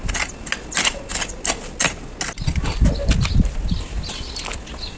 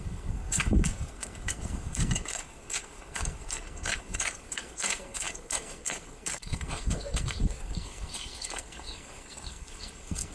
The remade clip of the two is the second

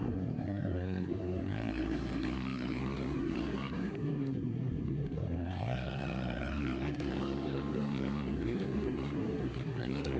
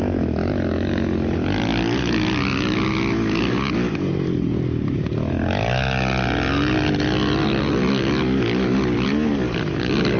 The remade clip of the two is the first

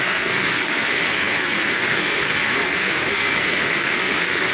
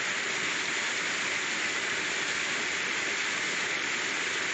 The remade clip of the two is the first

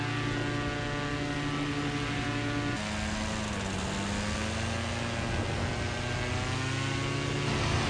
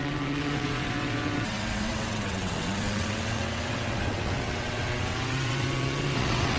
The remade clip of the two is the second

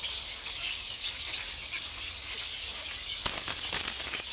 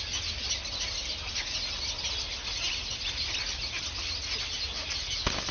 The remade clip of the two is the first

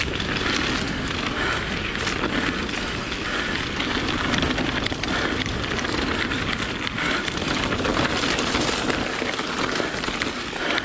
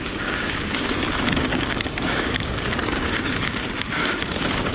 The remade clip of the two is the second